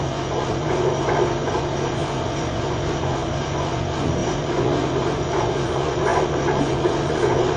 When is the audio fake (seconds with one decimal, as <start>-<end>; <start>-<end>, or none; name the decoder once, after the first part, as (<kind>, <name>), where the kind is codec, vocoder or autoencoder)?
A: 0.0-7.6 (vocoder, Vocos)